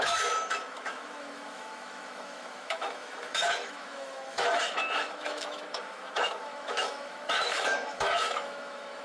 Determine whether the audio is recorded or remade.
remade